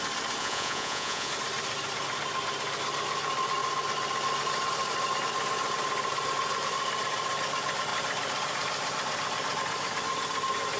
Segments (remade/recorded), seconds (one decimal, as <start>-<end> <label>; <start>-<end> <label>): 0.0-0.4 recorded; 0.4-1.3 remade; 1.3-10.8 recorded